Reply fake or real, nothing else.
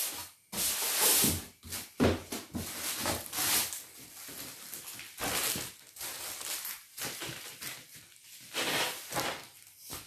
real